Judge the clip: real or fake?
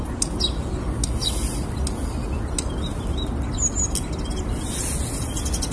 real